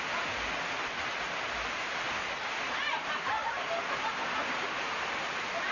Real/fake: real